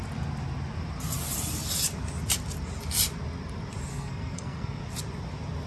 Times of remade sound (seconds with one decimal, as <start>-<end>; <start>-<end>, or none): 3.9-4.8